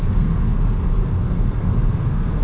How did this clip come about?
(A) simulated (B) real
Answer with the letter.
A